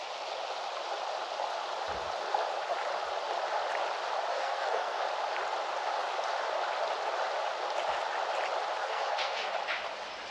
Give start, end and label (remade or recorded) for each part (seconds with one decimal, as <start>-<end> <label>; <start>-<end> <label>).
0.0-4.3 recorded; 4.3-5.0 remade; 5.0-8.8 recorded; 8.8-9.5 remade; 9.5-10.3 recorded